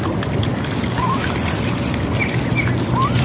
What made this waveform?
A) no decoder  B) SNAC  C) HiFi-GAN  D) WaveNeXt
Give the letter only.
A